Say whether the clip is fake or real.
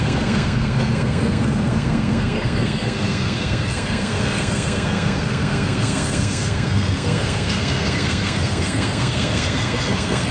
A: fake